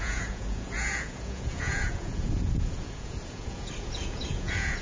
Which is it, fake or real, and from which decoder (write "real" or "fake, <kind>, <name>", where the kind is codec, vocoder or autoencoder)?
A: fake, vocoder, Vocos